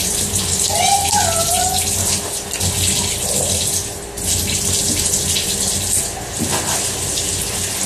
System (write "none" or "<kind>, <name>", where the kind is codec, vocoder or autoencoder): none